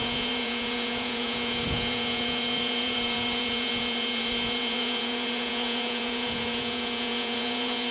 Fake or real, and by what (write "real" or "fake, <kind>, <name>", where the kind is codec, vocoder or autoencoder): fake, vocoder, Vocos